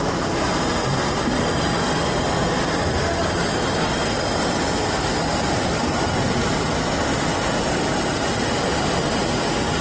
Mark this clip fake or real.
real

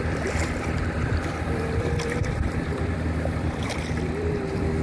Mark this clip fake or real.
fake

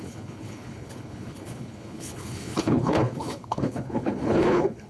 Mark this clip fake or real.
fake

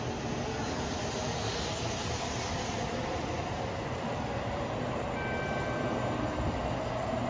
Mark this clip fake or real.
real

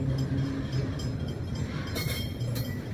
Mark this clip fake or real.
real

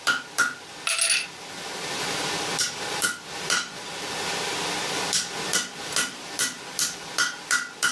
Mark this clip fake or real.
fake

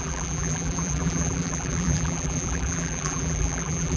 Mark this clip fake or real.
fake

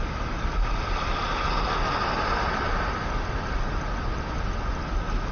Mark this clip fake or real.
real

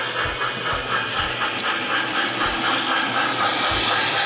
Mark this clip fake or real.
real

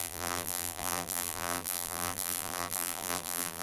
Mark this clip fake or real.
fake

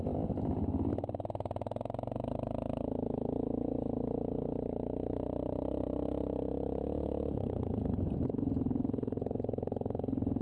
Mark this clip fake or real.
real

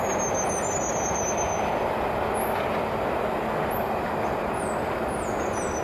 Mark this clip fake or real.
real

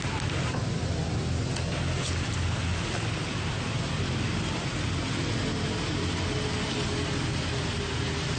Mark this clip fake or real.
real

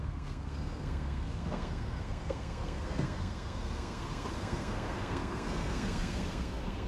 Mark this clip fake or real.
fake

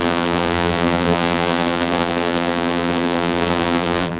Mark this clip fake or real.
fake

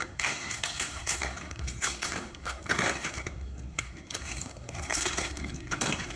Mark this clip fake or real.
fake